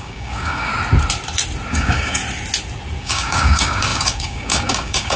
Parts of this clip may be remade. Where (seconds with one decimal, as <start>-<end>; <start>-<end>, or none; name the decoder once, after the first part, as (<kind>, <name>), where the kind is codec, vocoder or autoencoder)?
0.0-0.7 (codec, DAC); 1.7-2.2; 3.0-5.2